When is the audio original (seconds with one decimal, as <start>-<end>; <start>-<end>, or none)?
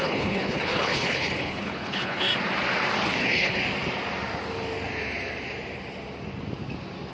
2.3-3.2; 3.6-7.1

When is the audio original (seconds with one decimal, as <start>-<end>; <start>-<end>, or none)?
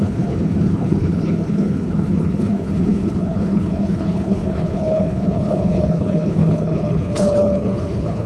none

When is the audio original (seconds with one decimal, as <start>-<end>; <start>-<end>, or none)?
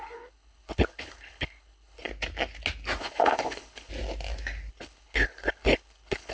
2.1-3.0; 3.9-4.7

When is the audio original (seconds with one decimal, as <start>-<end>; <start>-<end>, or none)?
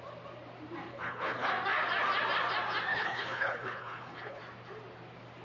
0.0-0.9; 1.5-2.9; 4.4-5.4